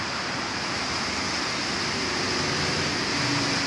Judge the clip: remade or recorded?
recorded